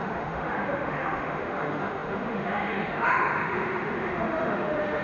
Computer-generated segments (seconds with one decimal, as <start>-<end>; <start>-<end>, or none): 0.0-5.0